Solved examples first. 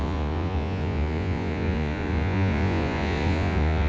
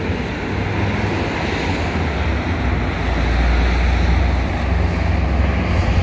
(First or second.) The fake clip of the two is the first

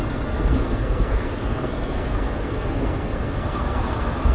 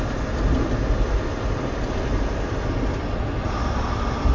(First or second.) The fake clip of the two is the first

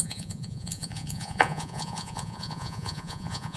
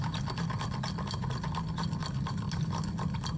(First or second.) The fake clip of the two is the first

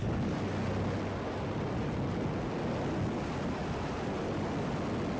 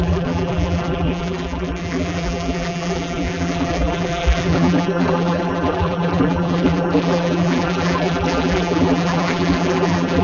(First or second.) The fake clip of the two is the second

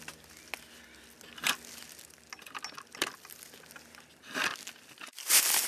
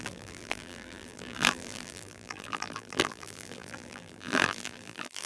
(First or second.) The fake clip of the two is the second